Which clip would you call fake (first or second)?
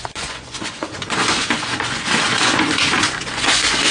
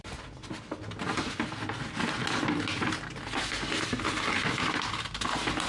first